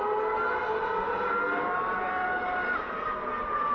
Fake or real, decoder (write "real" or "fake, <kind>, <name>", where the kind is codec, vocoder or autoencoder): real